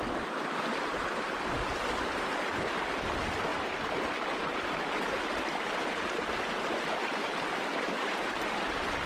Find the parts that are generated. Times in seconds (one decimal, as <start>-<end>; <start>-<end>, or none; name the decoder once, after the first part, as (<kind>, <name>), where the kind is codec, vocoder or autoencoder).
none